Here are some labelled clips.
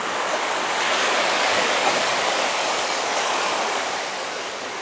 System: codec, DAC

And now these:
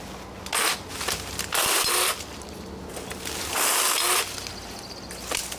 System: none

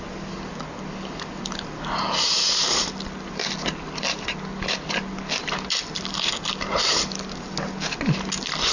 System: none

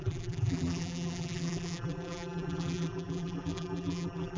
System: vocoder, BigVGAN v2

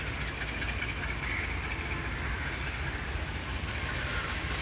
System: none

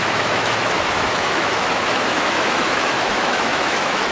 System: autoencoder, DAC-VAE